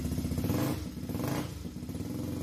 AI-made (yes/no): no